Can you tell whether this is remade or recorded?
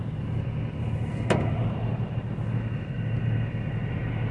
recorded